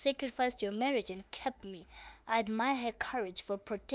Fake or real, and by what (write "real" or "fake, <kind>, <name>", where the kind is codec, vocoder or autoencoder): fake, autoencoder, DAC-VAE